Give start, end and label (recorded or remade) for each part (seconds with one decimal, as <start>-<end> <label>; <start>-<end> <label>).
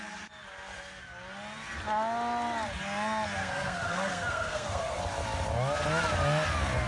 0.0-3.4 recorded; 3.4-5.0 remade; 5.0-6.9 recorded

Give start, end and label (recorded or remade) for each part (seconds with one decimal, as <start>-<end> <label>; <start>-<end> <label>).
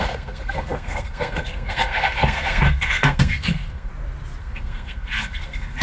0.0-3.9 remade; 3.9-4.4 recorded; 4.4-5.8 remade